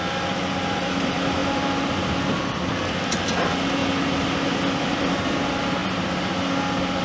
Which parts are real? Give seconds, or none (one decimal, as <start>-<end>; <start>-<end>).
3.8-4.8